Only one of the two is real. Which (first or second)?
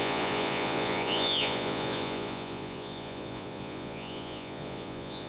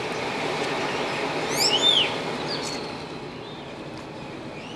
second